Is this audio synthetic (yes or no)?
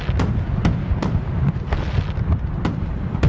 no